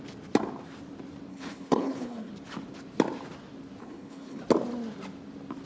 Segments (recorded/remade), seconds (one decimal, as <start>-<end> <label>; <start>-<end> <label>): 0.0-1.3 recorded; 1.3-2.3 remade; 2.3-3.8 recorded; 3.8-4.4 remade; 4.4-5.7 recorded